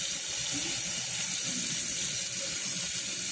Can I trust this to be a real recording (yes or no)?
yes